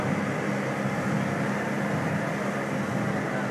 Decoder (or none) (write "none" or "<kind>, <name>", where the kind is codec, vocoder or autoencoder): none